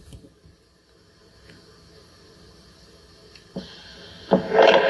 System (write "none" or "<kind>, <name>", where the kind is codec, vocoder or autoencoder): none